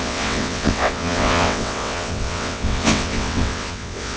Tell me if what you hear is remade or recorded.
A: remade